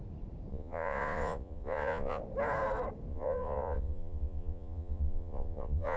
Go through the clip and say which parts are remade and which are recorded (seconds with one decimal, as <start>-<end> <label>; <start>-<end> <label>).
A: 0.0-0.5 recorded; 0.5-2.2 remade; 2.2-3.1 recorded; 3.1-6.0 remade